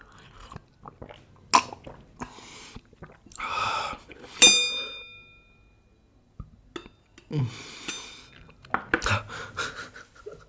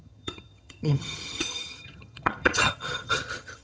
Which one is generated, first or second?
second